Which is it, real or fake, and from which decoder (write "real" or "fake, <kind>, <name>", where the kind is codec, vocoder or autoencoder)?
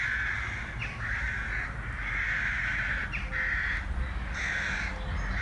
real